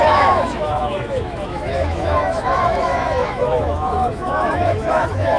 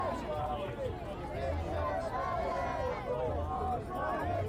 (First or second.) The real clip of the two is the second